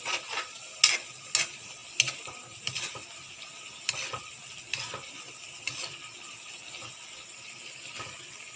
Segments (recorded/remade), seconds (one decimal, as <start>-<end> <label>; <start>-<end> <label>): 0.0-8.6 recorded